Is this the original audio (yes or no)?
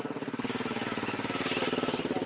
yes